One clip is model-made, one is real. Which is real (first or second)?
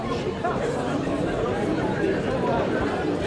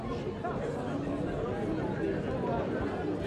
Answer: second